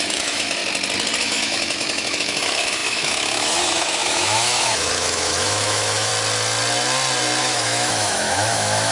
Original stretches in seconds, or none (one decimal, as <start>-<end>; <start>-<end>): 0.6-1.2; 6.1-7.4